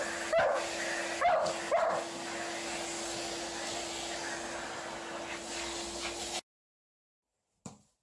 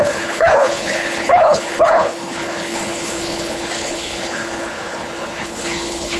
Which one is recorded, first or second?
first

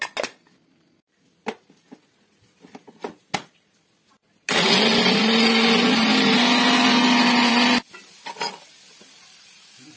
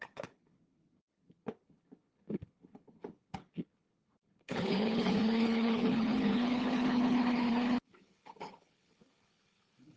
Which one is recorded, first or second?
first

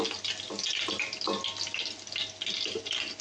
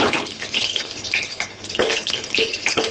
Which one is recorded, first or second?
first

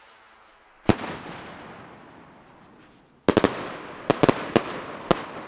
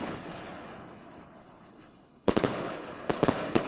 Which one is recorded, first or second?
first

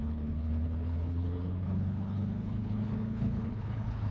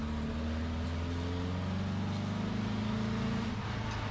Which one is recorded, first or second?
second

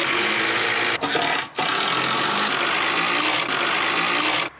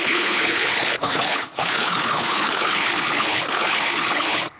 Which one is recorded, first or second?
first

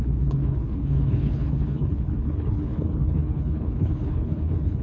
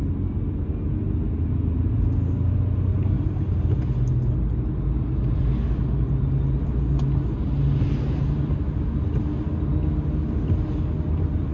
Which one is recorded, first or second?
second